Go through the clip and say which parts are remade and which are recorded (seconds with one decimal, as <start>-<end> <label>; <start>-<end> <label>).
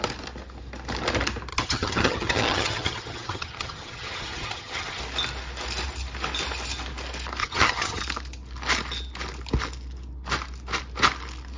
0.0-1.5 recorded; 1.5-5.0 remade; 5.0-7.4 recorded; 7.4-8.0 remade; 8.0-11.6 recorded